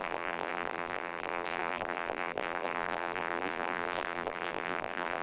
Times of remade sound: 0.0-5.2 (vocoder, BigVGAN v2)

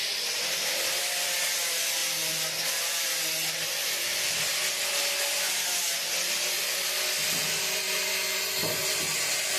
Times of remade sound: 0.0-1.0 (vocoder, BigVGAN v2)

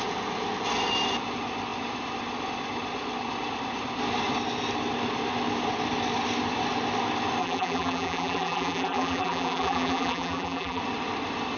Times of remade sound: 7.4-10.8 (vocoder, BigVGAN v2)

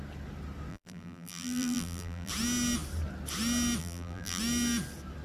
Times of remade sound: 0.7-2.3 (vocoder, BigVGAN v2); 3.8-4.4

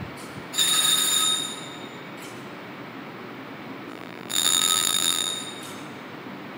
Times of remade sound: 3.9-5.3 (vocoder, BigVGAN v2)